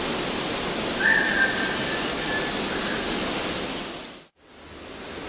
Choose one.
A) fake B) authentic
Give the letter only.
B